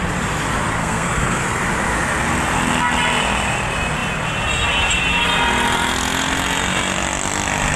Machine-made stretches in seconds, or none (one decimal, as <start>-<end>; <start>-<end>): 0.8-1.4